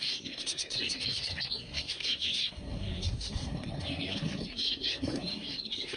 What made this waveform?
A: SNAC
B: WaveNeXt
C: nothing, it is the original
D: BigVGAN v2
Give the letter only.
A